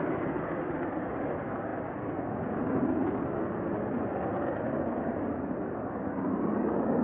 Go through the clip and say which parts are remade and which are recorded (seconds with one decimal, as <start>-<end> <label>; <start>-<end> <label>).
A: 0.0-7.0 recorded